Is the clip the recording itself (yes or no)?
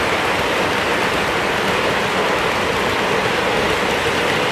yes